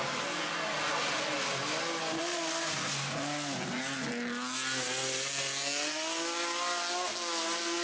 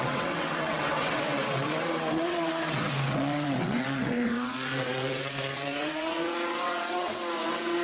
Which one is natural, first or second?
first